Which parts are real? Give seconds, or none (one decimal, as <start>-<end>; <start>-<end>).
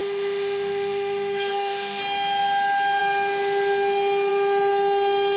2.0-5.4